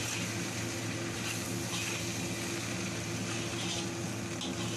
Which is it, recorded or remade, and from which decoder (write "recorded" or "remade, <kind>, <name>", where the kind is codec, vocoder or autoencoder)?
recorded